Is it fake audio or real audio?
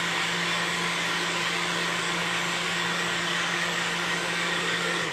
fake